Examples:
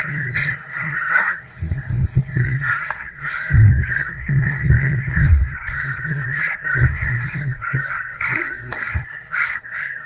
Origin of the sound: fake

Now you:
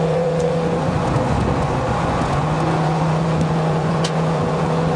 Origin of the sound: fake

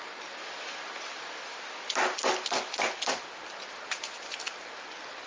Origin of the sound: real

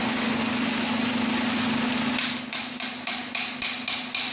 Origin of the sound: real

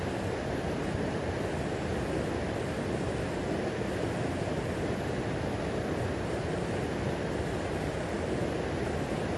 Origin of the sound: real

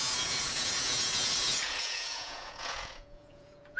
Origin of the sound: fake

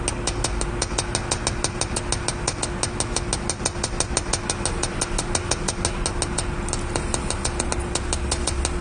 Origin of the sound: real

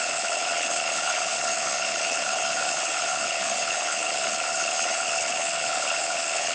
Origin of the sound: fake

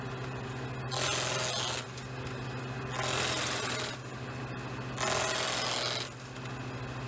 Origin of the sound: real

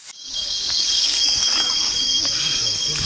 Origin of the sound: fake